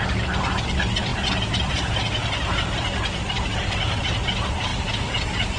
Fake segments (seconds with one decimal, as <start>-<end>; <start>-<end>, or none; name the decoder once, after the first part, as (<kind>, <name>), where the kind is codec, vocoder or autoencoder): 4.7-5.6 (vocoder, BigVGAN v2)